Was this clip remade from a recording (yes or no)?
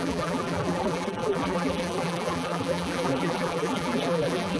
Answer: yes